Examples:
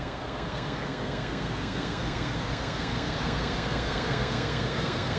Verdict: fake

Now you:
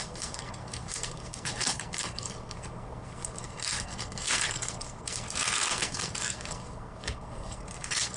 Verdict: fake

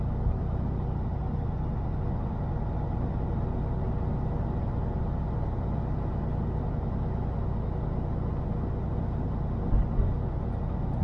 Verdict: real